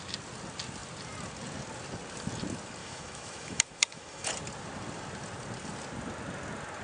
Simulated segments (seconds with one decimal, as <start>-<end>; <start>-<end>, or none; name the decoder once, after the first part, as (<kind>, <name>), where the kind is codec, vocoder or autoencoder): 2.8-4.3 (autoencoder, DAC-VAE)

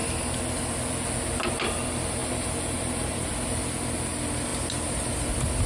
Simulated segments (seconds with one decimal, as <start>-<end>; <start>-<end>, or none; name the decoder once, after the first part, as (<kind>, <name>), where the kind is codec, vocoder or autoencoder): 2.2-3.3 (vocoder, BigVGAN v2)

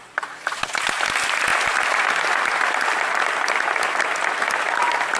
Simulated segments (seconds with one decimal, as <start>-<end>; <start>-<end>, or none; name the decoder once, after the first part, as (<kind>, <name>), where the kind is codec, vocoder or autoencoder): none

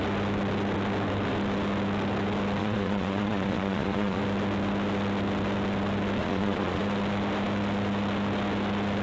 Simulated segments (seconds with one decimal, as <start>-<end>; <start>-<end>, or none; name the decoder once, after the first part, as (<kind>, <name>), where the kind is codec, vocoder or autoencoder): 2.6-4.2 (vocoder, Vocos); 6.2-6.8

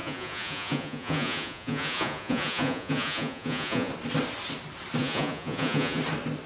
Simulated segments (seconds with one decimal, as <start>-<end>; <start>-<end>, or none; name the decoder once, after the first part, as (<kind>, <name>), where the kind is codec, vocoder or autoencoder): 0.0-3.9 (vocoder, Vocos); 5.0-6.0

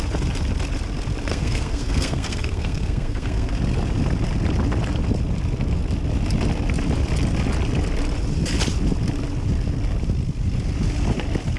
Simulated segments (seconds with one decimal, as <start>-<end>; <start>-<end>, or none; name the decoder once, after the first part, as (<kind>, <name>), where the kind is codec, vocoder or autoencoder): 1.3-3.5 (codec, SNAC)

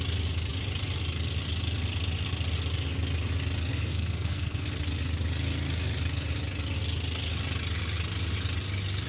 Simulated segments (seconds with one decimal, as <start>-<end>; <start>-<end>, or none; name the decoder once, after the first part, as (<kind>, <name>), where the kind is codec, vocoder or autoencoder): 3.7-4.8 (codec, SNAC)